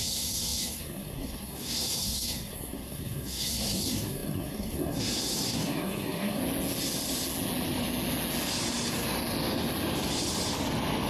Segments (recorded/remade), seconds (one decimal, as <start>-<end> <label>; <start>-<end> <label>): 0.0-6.4 remade; 6.4-11.1 recorded